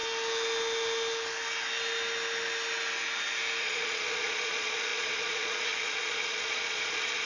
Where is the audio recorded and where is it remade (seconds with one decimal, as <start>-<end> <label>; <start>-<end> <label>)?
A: 0.0-3.6 recorded; 3.6-7.3 remade